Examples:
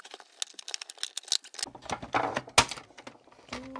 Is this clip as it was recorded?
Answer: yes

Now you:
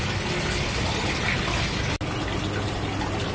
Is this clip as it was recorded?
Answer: yes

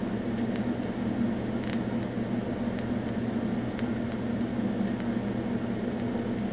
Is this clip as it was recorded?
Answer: yes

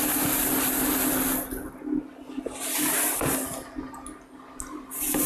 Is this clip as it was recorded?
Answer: yes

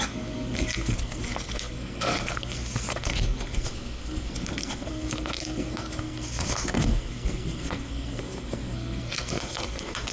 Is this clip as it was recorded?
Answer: no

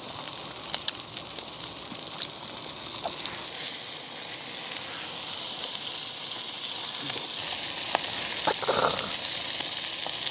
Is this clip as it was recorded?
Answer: yes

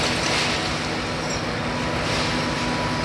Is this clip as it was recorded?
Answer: yes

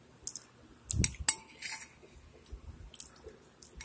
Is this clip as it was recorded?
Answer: yes